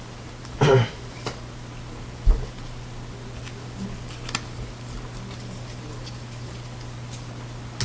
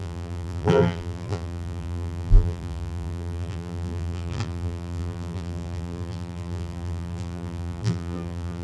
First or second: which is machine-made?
second